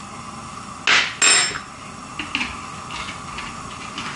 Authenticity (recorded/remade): recorded